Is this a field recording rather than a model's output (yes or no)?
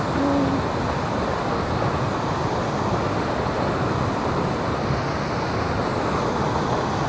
yes